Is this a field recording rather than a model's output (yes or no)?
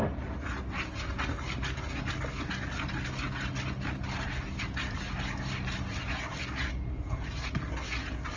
yes